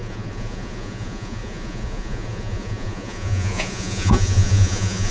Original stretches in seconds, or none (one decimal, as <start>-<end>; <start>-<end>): none